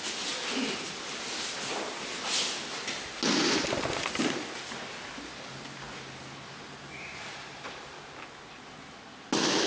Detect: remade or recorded recorded